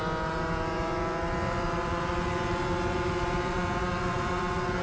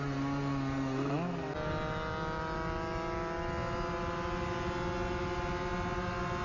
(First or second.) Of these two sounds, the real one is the second